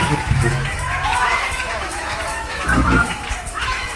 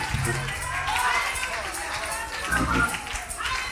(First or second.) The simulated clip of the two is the first